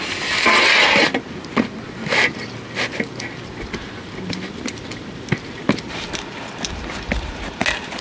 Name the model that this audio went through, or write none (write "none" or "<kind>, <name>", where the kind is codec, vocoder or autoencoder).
none